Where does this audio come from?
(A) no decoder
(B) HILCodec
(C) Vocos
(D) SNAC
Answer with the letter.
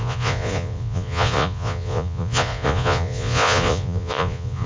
C